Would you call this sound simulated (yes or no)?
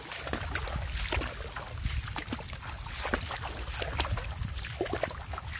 no